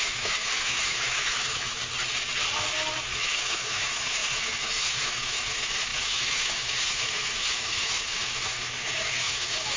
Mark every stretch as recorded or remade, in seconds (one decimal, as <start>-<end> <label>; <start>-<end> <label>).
0.0-1.8 remade; 1.8-3.0 recorded; 3.0-9.8 remade